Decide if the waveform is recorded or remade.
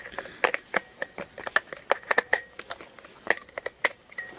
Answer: recorded